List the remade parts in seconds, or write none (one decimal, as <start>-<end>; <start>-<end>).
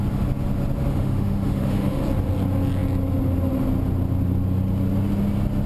0.9-2.0